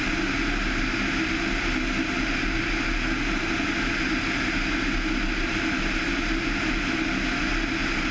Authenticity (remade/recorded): recorded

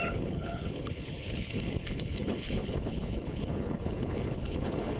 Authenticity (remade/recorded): remade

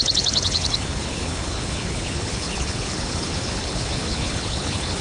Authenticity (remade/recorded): remade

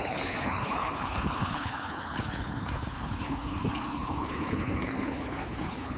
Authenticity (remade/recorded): remade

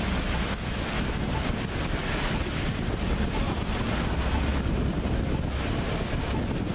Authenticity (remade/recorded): recorded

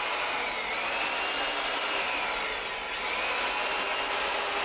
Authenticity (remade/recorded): recorded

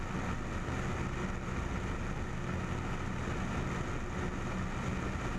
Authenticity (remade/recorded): recorded